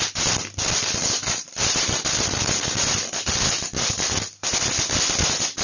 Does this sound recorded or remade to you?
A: remade